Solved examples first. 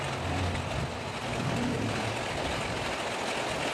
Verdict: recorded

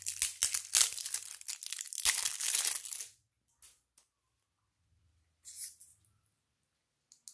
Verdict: recorded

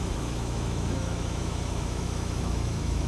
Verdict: remade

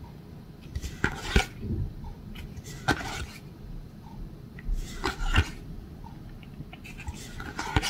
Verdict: recorded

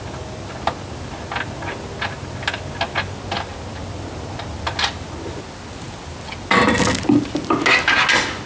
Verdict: recorded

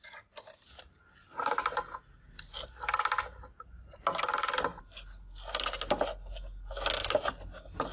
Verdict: recorded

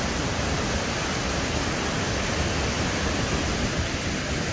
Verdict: recorded